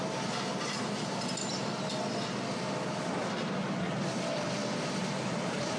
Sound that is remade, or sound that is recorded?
recorded